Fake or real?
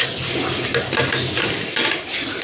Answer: real